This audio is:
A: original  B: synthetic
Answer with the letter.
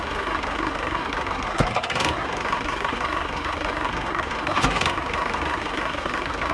B